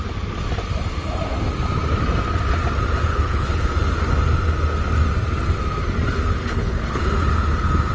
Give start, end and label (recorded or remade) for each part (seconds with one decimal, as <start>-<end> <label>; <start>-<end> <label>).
0.0-3.1 recorded; 3.1-3.7 remade; 3.7-6.4 recorded; 6.4-7.0 remade; 7.0-7.9 recorded